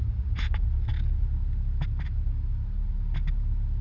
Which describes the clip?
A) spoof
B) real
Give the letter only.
B